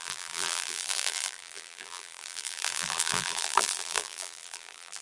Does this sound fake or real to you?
fake